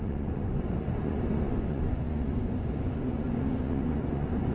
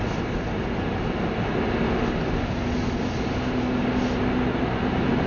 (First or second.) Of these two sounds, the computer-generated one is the first